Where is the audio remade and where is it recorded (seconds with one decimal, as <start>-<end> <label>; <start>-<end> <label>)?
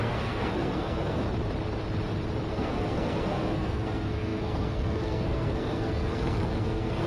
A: 0.0-1.2 remade; 1.2-2.5 recorded; 2.5-7.1 remade